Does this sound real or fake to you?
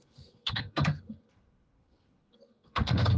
fake